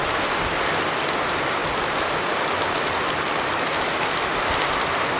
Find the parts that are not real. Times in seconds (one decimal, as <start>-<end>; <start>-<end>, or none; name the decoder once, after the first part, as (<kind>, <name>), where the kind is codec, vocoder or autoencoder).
none

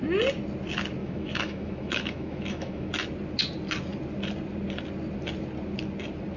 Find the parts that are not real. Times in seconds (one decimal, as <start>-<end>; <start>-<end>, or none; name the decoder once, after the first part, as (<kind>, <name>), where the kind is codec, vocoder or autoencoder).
1.0-2.9 (autoencoder, DAC-VAE)

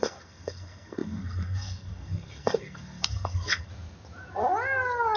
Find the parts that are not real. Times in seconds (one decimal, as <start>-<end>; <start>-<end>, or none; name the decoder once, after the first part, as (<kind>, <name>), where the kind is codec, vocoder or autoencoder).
0.0-3.7 (codec, SNAC)

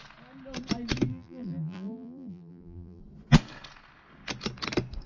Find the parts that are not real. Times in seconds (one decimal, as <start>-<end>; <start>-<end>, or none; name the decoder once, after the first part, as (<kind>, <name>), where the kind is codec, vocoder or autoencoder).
1.1-3.0 (vocoder, BigVGAN v2)

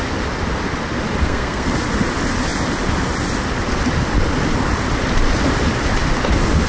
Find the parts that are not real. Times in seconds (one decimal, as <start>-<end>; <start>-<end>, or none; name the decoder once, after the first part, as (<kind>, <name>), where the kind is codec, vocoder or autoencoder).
1.2-1.7 (codec, SNAC)